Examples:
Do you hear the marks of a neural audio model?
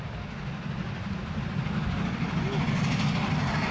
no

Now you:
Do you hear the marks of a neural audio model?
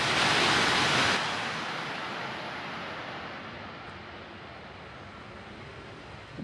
no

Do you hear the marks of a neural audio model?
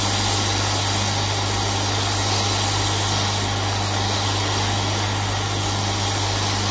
no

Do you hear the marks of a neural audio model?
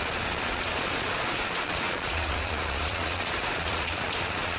yes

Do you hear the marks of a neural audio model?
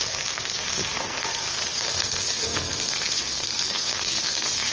yes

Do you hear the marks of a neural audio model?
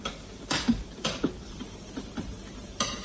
no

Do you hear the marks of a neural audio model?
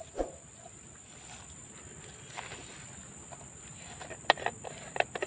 no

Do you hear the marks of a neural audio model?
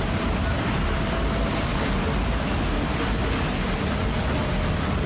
no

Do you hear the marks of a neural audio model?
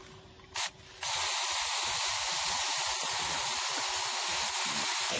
no